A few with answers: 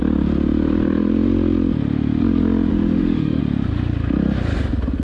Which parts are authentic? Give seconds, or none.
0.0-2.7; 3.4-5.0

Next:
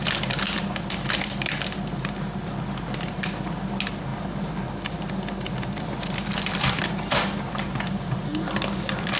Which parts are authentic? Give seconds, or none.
0.0-9.2

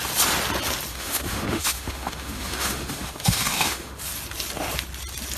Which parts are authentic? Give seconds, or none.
0.0-0.9; 4.0-5.4